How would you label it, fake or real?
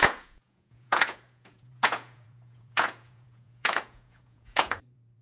fake